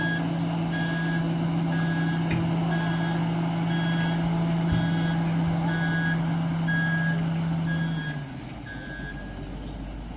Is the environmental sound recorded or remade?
recorded